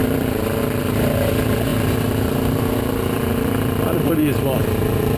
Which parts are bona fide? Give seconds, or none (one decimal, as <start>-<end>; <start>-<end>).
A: none